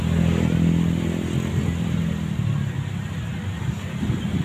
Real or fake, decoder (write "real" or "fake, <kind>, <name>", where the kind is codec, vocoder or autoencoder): real